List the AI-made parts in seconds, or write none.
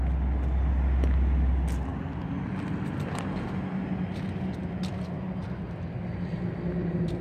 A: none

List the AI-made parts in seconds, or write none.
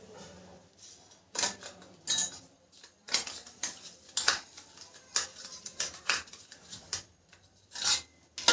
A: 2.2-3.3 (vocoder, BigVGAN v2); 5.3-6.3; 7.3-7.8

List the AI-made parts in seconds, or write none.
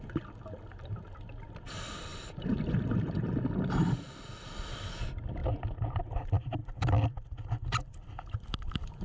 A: 6.6-9.0 (vocoder, BigVGAN v2)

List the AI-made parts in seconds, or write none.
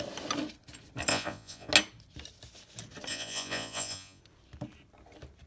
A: 1.1-1.7 (vocoder, Vocos); 3.1-4.2